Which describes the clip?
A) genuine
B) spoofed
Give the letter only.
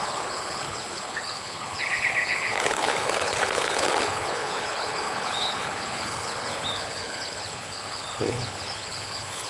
B